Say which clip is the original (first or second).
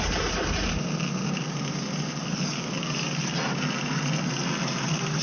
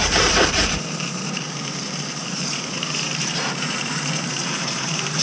first